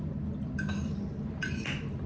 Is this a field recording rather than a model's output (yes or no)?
yes